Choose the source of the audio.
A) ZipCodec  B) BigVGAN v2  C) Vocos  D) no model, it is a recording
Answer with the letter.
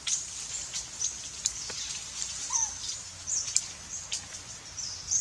B